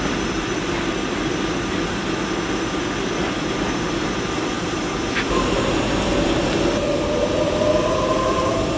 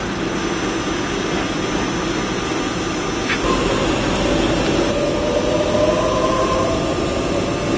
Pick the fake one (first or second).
first